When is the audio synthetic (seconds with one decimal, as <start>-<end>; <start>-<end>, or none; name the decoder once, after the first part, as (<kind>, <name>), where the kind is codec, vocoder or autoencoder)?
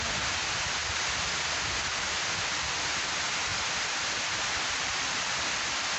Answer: 0.8-2.8 (vocoder, BigVGAN v2); 3.5-5.6